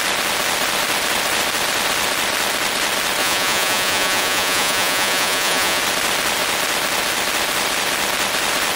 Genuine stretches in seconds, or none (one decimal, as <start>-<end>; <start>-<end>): 0.0-3.2; 5.8-8.8